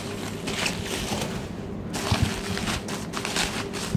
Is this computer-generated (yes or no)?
no